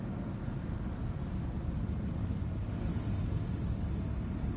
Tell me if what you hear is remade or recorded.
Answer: recorded